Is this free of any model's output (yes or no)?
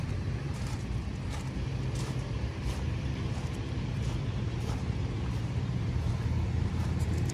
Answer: no